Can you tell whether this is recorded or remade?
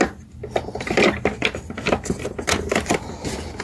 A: recorded